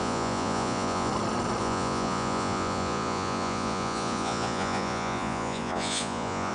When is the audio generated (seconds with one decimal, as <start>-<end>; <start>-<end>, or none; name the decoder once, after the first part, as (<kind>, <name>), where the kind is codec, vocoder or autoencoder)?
0.0-1.1 (vocoder, Vocos); 1.6-6.5